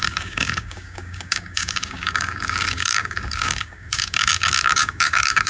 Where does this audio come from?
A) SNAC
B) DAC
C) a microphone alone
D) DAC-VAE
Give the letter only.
B